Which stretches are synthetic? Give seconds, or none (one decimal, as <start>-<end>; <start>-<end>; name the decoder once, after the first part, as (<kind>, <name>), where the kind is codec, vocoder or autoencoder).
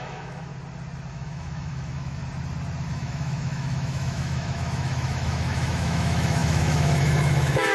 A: 0.0-0.5 (autoencoder, DAC-VAE); 1.1-2.2; 2.9-7.7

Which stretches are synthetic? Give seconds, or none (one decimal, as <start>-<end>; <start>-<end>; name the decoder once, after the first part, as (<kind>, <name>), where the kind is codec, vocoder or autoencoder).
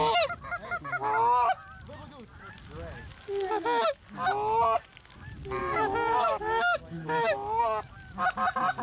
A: 5.6-7.6 (autoencoder, DAC-VAE)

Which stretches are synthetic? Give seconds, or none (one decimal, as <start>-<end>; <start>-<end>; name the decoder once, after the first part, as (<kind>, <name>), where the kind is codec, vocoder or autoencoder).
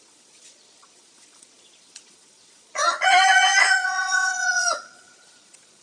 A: 0.0-5.8 (vocoder, Vocos)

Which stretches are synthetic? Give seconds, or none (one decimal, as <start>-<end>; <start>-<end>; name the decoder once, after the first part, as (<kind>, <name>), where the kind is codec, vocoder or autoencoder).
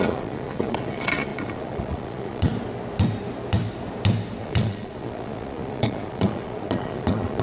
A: 0.0-2.5 (vocoder, Vocos); 4.4-7.4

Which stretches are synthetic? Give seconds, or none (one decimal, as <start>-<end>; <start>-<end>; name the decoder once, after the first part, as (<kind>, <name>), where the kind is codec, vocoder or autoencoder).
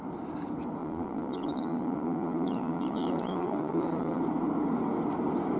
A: 0.8-4.2 (vocoder, Vocos)